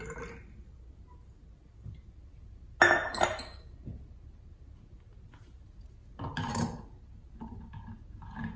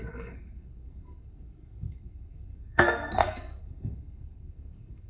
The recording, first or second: first